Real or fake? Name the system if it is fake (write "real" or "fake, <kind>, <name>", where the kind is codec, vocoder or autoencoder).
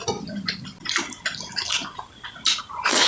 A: real